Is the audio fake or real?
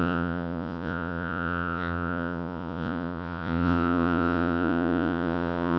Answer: fake